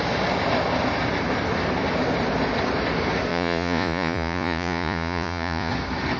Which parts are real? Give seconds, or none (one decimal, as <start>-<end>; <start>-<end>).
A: 0.0-3.3; 5.7-6.2

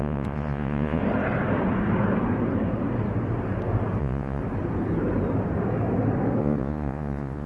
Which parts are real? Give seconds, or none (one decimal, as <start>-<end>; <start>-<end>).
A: 1.0-4.0; 4.4-6.4